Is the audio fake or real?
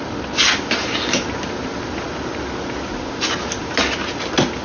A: real